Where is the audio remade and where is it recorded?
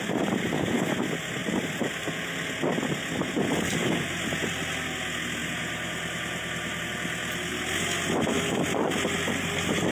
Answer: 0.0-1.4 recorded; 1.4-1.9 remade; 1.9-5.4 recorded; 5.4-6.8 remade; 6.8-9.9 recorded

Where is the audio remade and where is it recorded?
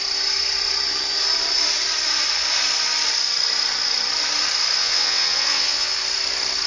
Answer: 0.0-4.8 recorded; 4.8-6.0 remade; 6.0-6.7 recorded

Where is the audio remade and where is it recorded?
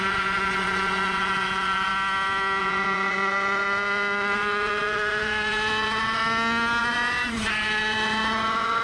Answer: 0.0-1.9 remade; 1.9-2.6 recorded; 2.6-6.2 remade; 6.2-6.8 recorded; 6.8-8.8 remade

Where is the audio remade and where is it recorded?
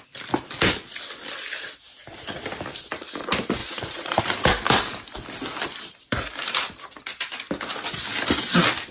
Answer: 0.0-3.6 recorded; 3.6-4.2 remade; 4.2-8.9 recorded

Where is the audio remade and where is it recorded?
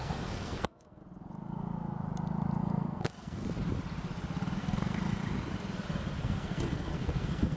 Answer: 0.0-1.0 remade; 1.0-2.6 recorded; 2.6-3.4 remade; 3.4-4.6 recorded; 4.6-5.0 remade; 5.0-6.2 recorded; 6.2-7.6 remade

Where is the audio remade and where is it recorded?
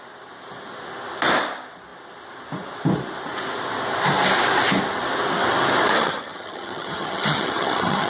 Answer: 0.0-6.0 recorded; 6.0-8.1 remade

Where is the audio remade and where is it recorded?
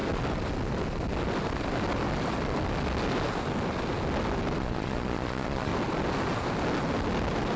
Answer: 0.0-4.6 recorded; 4.6-5.7 remade; 5.7-7.6 recorded